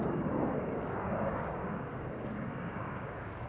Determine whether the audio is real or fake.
fake